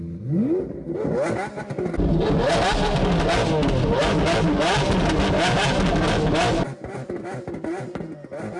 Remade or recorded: recorded